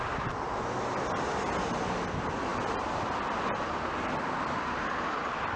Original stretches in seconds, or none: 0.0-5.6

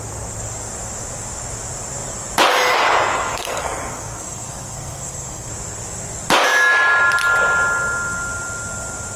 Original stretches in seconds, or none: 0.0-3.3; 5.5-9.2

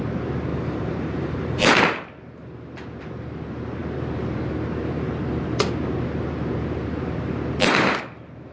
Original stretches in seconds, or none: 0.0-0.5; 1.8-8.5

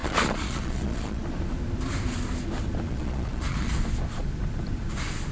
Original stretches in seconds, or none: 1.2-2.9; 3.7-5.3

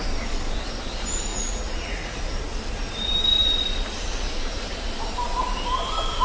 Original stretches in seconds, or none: 0.0-1.3; 2.2-6.2